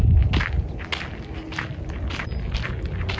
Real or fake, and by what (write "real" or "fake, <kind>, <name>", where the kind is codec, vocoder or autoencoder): real